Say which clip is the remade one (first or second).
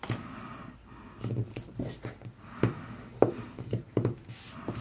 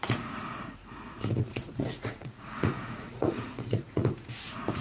second